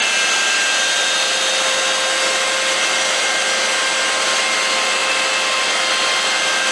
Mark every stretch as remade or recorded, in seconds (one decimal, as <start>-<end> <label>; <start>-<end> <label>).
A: 0.0-6.7 recorded